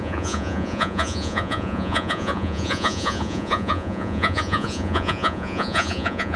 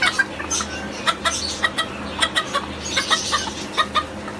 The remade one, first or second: first